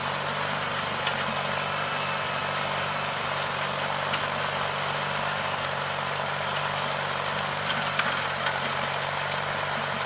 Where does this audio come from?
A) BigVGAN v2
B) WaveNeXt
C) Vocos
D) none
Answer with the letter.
D